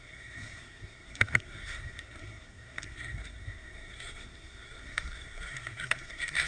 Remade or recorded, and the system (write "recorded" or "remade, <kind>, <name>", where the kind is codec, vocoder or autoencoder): remade, codec, SNAC